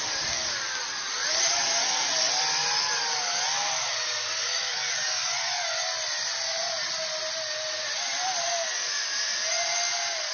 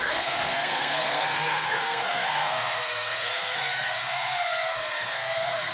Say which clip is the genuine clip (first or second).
first